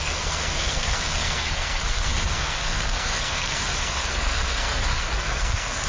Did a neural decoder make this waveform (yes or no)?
yes